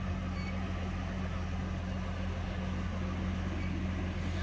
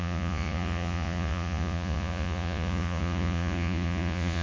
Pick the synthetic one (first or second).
second